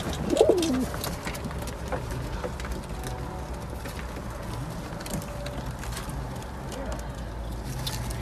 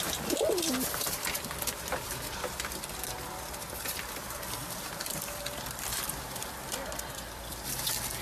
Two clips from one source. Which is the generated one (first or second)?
second